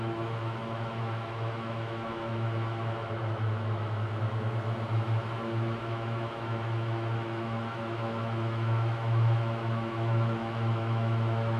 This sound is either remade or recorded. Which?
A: remade